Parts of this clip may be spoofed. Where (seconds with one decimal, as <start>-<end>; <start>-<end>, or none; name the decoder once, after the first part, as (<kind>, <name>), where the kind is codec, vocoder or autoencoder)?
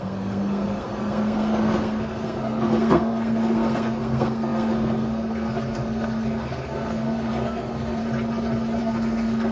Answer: 0.0-8.0 (codec, SNAC); 8.8-9.5